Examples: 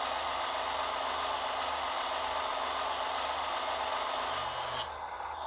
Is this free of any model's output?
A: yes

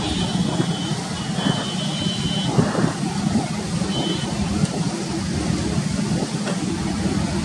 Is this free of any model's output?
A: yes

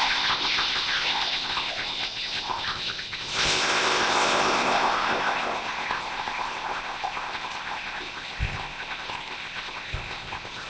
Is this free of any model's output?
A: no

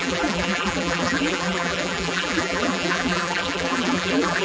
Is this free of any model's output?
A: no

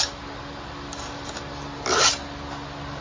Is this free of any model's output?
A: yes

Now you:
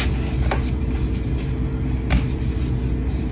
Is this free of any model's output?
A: yes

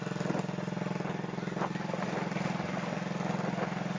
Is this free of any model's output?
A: yes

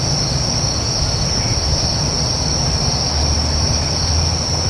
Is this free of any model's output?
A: yes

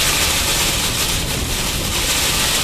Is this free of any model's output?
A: yes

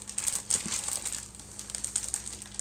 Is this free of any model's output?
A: yes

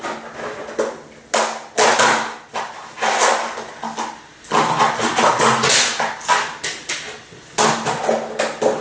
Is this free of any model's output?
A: yes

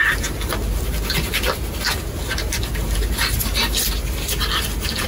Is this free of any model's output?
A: yes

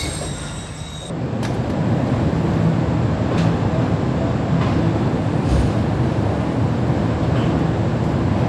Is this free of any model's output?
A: yes